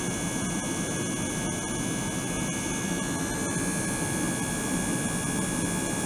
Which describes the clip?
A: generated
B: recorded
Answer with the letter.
B